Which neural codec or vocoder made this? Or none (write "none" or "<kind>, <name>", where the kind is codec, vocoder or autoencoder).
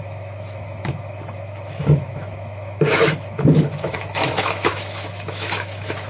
autoencoder, DAC-VAE